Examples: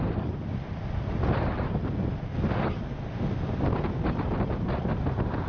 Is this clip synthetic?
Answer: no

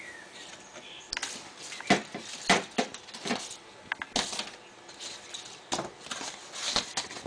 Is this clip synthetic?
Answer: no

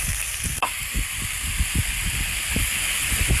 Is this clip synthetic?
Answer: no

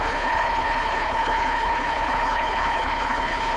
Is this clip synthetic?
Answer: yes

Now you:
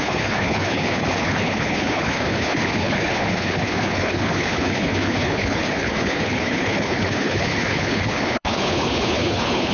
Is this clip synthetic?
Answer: yes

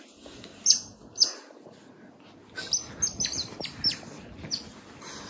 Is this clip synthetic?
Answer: no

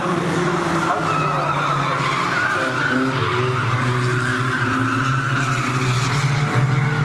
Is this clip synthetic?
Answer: no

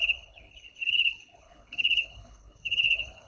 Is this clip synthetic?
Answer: yes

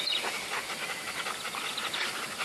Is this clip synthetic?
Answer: no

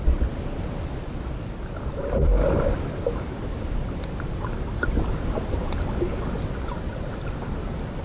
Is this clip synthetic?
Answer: no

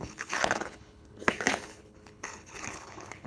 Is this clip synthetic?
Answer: yes